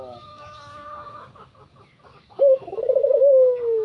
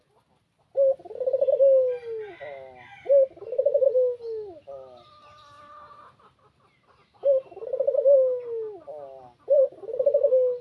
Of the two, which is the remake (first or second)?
first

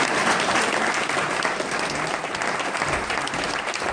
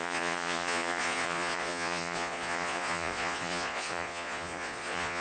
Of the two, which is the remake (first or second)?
second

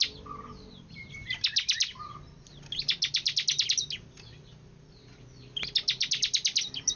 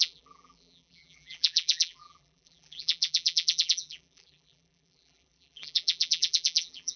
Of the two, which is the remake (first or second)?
second